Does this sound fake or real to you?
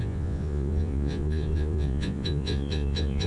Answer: fake